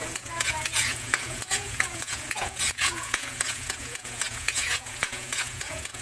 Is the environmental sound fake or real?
fake